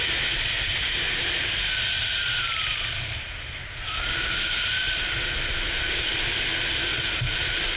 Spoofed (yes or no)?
no